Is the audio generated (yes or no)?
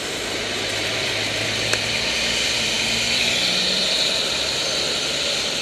yes